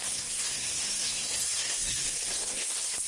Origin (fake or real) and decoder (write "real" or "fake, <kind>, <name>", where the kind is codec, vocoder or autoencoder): fake, codec, SNAC